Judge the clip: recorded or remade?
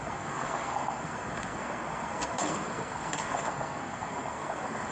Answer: remade